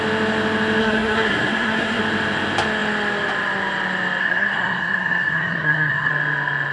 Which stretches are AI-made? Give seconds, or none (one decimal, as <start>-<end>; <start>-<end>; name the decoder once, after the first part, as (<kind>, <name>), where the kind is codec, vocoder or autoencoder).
0.8-2.0 (codec, SNAC); 4.2-6.1